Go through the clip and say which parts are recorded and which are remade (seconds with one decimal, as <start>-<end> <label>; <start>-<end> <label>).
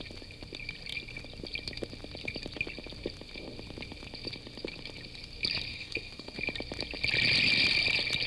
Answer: 0.0-5.7 recorded; 5.7-6.4 remade; 6.4-8.3 recorded